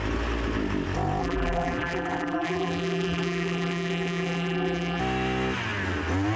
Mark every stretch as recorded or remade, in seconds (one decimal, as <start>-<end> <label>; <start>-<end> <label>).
0.0-1.2 recorded; 1.2-5.0 remade; 5.0-6.4 recorded

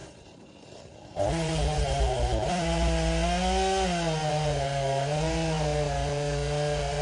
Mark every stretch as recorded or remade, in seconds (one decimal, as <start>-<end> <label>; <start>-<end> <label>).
0.0-2.5 remade; 2.5-4.2 recorded; 4.2-7.0 remade